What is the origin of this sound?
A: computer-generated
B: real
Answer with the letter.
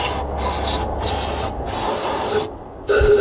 B